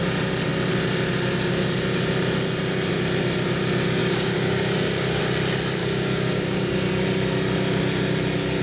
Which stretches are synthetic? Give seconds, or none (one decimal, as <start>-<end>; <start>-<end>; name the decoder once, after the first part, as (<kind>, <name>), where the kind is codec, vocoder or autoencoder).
4.0-5.2 (codec, DAC); 5.8-6.7